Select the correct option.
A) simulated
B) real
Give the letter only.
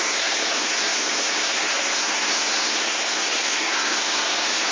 A